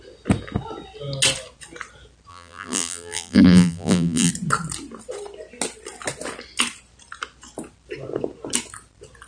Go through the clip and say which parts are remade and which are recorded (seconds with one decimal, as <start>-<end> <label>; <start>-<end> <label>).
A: 0.0-2.3 recorded; 2.3-4.3 remade; 4.3-9.3 recorded